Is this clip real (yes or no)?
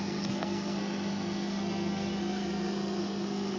no